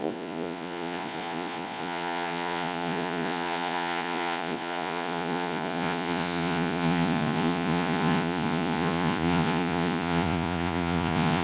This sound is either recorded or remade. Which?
remade